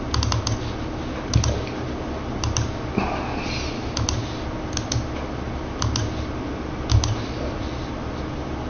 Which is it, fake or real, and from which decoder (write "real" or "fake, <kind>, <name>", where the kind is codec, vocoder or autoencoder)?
real